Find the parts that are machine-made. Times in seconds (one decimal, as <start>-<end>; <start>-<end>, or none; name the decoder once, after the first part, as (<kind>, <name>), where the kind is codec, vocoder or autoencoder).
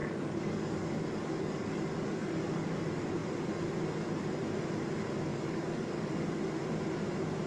0.0-2.8 (codec, DAC); 5.3-6.3